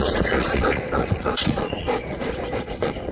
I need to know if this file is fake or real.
fake